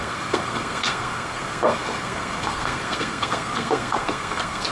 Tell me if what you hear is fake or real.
fake